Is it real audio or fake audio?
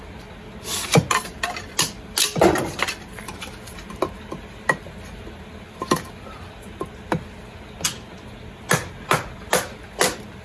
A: real